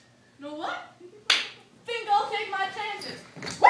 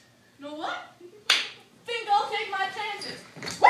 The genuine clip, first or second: first